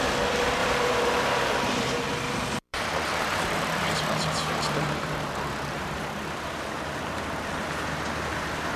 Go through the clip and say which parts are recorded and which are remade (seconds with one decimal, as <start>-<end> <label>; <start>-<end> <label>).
0.0-0.6 recorded; 0.6-5.9 remade; 5.9-8.8 recorded